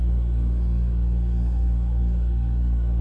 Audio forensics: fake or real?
fake